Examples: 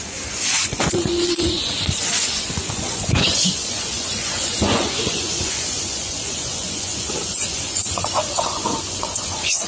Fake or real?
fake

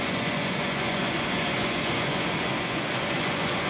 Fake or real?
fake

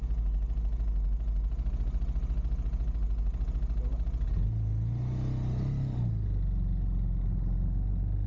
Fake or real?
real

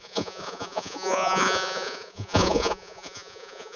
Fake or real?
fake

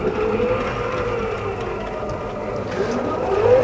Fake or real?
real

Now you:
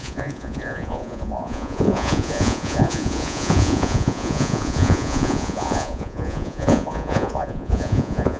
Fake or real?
fake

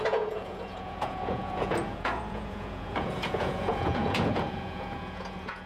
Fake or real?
fake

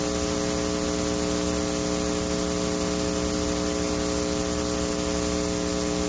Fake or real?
real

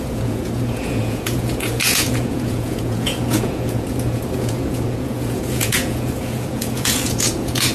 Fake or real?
fake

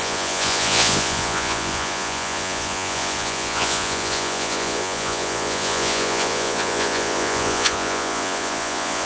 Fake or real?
fake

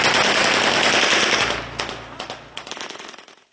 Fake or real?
real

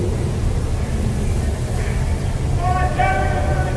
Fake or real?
real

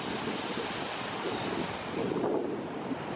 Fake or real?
real